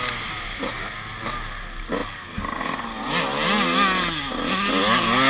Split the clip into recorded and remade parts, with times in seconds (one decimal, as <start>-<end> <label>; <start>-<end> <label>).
0.0-5.3 recorded